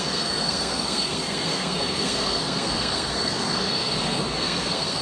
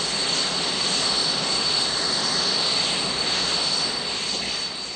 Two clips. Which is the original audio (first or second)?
second